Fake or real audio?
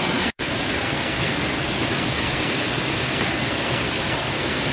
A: fake